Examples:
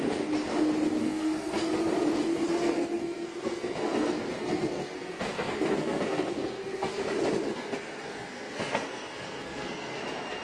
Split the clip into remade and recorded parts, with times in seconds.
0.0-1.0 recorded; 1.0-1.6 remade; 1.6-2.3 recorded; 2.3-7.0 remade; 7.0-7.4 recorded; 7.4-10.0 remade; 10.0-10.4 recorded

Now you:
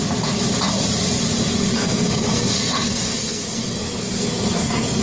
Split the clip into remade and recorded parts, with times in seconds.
0.0-1.8 recorded; 1.8-5.0 remade

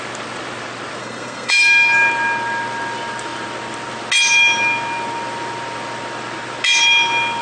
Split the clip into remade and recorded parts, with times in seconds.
0.0-1.0 recorded; 1.0-1.5 remade; 1.5-7.4 recorded